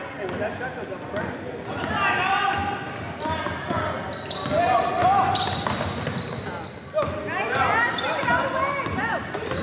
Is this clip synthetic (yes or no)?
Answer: no